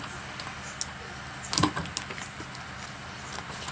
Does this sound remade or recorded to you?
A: recorded